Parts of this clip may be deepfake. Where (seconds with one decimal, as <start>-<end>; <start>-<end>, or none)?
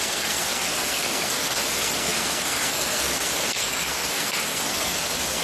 0.0-5.4